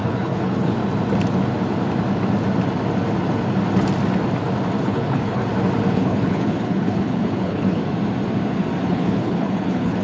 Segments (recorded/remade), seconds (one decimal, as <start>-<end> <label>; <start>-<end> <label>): 0.0-0.8 remade; 0.8-4.8 recorded; 4.8-5.4 remade; 5.4-5.9 recorded; 5.9-7.8 remade; 7.8-8.9 recorded; 8.9-10.0 remade

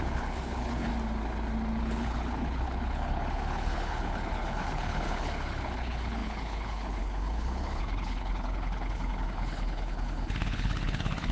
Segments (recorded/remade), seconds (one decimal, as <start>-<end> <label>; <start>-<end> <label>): 0.0-0.9 remade; 0.9-1.8 recorded; 1.8-11.3 remade

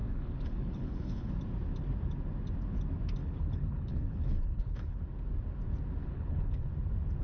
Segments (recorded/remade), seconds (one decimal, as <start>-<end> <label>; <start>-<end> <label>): 0.0-1.3 remade; 1.3-3.2 recorded; 3.2-5.0 remade; 5.0-6.0 recorded; 6.0-6.7 remade; 6.7-7.2 recorded